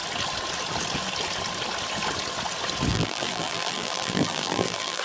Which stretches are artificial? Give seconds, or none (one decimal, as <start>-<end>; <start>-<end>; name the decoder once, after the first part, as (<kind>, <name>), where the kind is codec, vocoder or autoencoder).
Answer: 2.9-5.0 (vocoder, BigVGAN v2)